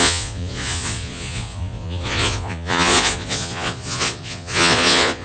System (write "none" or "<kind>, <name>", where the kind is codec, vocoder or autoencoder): vocoder, Vocos